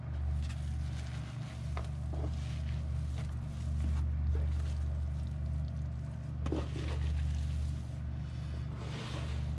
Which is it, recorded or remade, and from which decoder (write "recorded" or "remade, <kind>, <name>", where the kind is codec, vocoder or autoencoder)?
recorded